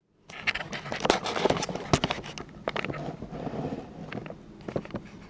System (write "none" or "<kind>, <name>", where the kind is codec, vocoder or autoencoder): none